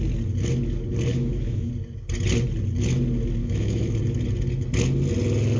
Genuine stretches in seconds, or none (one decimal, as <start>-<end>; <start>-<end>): 0.0-1.1; 1.7-3.4; 3.9-5.6